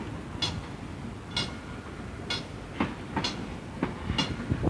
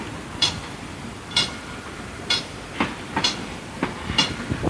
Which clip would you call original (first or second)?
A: first